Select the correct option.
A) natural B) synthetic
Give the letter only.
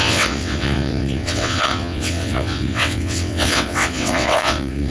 B